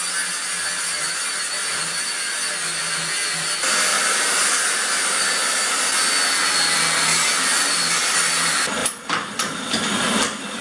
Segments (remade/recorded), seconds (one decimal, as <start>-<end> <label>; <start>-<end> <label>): 0.0-3.9 recorded; 3.9-5.9 remade; 5.9-8.8 recorded; 8.8-9.8 remade; 9.8-10.6 recorded